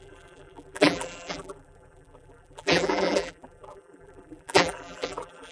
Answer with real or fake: fake